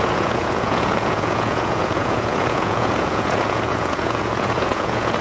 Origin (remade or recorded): remade